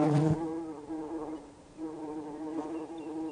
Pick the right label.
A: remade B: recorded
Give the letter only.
A